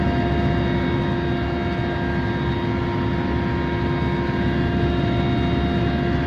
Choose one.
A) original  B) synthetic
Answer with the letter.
A